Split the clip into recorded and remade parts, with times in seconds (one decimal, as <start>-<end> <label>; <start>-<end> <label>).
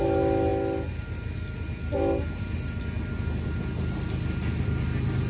0.0-5.3 recorded